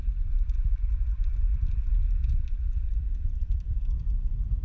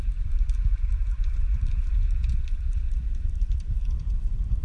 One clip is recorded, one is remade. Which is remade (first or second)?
second